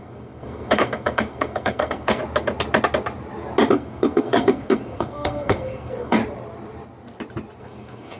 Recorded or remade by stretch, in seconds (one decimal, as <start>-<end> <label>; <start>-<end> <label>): 0.0-2.2 remade; 2.2-3.7 recorded; 3.7-6.2 remade; 6.2-7.6 recorded; 7.6-8.2 remade